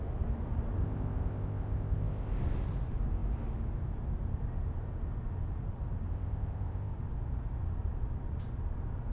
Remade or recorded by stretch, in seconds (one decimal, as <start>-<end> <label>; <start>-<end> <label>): 0.0-0.8 recorded; 0.8-2.4 remade; 2.4-6.1 recorded; 6.1-6.9 remade; 6.9-9.1 recorded